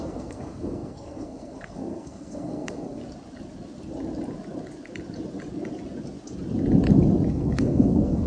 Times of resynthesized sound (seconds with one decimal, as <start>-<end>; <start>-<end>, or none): 0.0-3.0; 7.3-8.3